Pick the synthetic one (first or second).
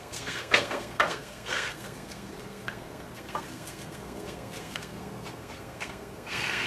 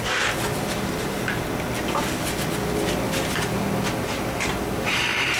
first